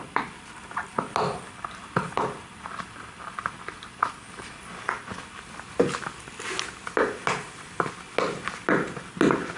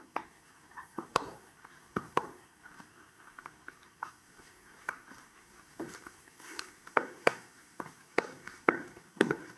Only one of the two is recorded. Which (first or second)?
first